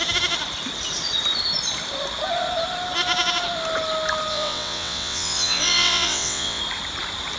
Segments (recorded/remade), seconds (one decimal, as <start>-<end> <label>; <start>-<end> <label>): 0.0-4.3 recorded; 4.3-6.6 remade; 6.6-7.4 recorded